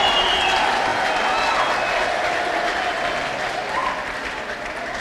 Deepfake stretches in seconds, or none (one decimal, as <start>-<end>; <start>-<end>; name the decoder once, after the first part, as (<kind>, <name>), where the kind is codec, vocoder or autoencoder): 3.8-4.4 (vocoder, BigVGAN v2)